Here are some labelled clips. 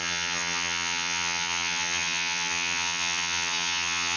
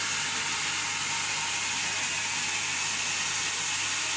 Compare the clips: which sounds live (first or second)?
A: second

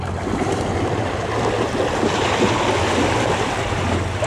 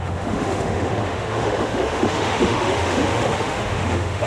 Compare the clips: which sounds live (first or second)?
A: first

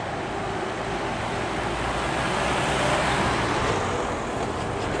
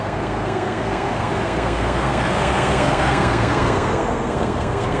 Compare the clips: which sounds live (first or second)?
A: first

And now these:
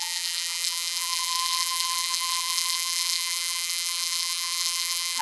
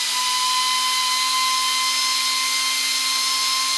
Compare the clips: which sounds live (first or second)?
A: second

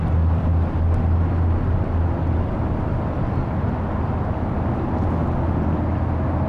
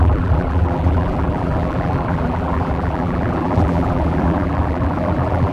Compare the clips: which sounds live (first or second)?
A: first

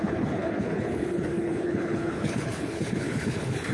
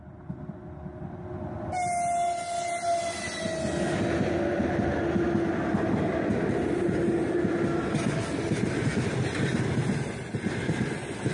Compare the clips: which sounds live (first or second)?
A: second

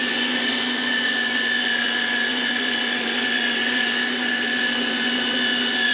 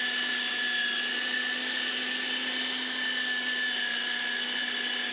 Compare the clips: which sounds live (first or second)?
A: second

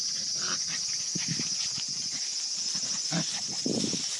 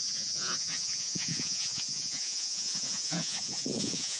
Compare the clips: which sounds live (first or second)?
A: first